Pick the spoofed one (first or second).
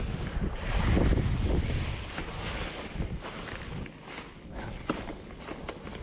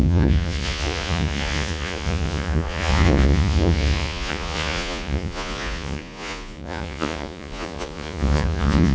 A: second